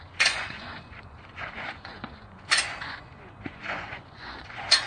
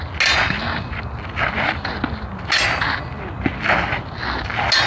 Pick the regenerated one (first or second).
first